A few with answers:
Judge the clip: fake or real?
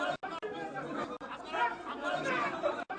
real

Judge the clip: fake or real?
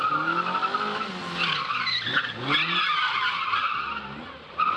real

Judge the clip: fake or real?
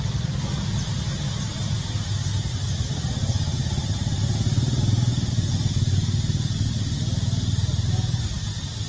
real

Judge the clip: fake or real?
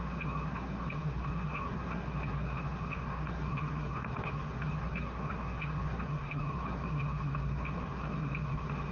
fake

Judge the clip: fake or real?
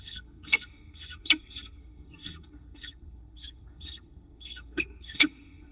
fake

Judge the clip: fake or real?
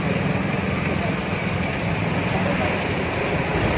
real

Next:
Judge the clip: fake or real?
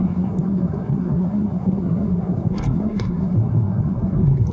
fake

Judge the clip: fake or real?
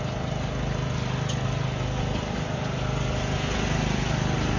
real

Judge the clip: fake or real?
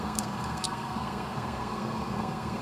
fake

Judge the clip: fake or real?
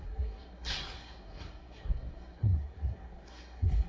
fake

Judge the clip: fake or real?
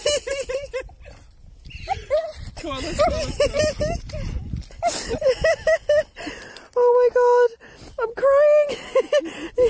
real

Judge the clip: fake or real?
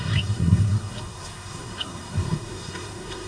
fake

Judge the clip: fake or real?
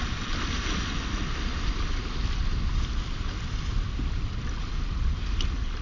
real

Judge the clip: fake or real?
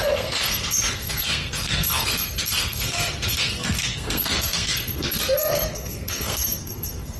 fake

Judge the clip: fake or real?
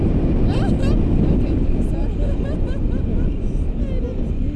real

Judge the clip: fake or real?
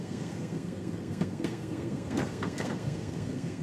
fake